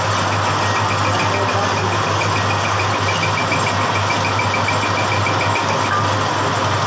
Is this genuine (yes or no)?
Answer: yes